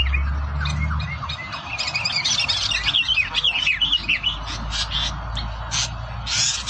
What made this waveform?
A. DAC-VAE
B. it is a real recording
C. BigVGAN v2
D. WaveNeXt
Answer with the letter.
B